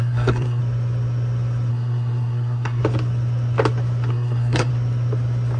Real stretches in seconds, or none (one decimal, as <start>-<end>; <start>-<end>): 0.6-1.7; 2.8-4.1; 4.7-5.6